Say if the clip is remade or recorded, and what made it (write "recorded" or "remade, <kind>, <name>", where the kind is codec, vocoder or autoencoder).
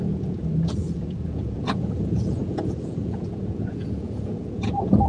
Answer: remade, vocoder, Vocos